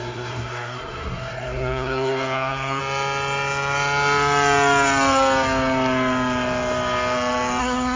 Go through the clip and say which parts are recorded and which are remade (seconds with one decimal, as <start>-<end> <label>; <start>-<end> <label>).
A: 0.0-2.8 remade; 2.8-7.6 recorded; 7.6-8.0 remade